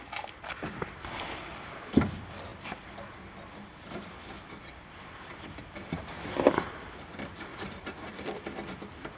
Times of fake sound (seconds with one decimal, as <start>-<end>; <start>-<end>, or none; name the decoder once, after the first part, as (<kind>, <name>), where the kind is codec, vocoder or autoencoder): 7.5-8.1 (vocoder, Vocos)